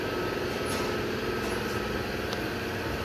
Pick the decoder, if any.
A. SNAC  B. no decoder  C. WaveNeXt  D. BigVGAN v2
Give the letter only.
B